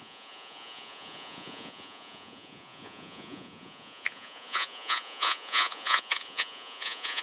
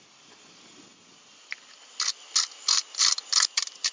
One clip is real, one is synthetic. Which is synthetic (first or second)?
first